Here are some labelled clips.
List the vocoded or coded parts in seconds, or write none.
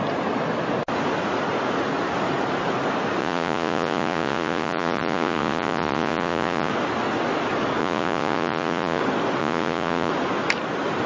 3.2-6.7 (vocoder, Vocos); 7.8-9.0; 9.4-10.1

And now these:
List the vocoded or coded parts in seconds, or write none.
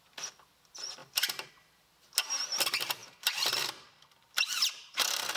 1.0-1.5 (vocoder, BigVGAN v2); 3.0-5.4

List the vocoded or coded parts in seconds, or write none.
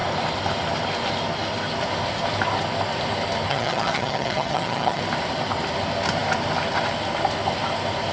3.5-5.0 (vocoder, HiFi-GAN)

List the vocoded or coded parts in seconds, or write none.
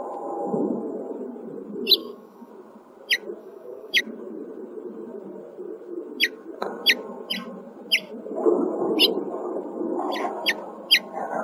2.0-2.5 (codec, DAC); 3.4-4.0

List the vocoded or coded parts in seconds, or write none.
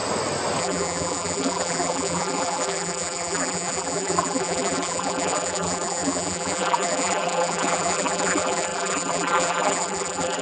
0.6-10.4 (vocoder, BigVGAN v2)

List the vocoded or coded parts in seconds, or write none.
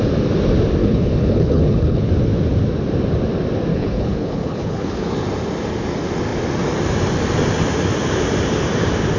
0.8-2.1 (codec, HILCodec); 3.7-5.1